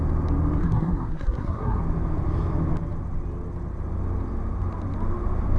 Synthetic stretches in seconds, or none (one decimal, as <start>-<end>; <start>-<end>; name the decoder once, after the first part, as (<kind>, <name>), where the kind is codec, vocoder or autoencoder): 0.6-1.8 (codec, SNAC)